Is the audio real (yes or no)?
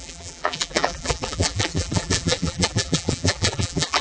no